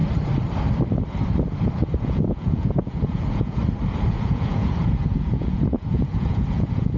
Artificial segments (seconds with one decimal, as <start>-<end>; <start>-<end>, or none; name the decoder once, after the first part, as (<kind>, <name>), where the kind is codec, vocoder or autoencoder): 2.0-3.6 (vocoder, Vocos); 4.1-7.0